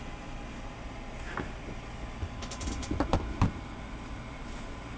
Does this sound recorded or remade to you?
recorded